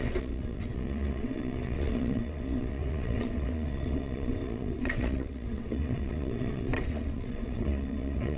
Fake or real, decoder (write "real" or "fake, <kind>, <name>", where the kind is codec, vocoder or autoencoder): fake, vocoder, WaveNeXt